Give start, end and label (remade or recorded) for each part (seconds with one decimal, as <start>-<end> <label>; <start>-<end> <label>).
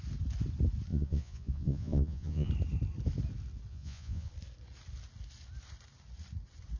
0.0-0.9 recorded; 0.9-2.5 remade; 2.5-3.7 recorded; 3.7-4.3 remade; 4.3-6.8 recorded